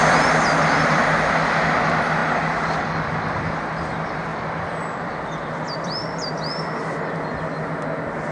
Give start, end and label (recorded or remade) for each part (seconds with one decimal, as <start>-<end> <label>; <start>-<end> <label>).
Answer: 0.0-4.3 recorded; 4.3-6.2 remade; 6.2-8.3 recorded